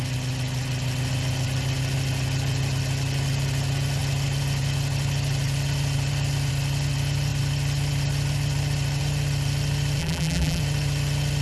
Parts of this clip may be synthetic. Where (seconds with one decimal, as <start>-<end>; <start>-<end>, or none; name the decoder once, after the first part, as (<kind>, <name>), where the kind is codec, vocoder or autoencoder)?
10.0-10.6 (vocoder, BigVGAN v2)